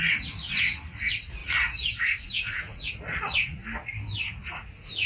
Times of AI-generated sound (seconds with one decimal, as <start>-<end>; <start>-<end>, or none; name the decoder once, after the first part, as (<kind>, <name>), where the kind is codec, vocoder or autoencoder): 0.0-3.6 (vocoder, Vocos); 4.3-5.1